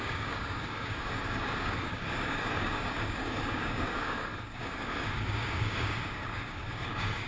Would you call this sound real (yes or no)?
no